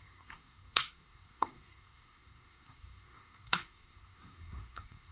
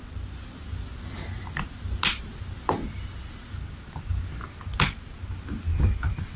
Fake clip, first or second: first